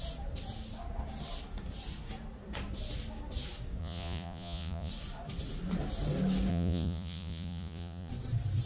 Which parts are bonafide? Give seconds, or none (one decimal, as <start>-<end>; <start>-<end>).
0.0-3.8; 4.9-6.5; 8.1-8.7